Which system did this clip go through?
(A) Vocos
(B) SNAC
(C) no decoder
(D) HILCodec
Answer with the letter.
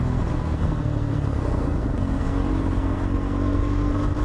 B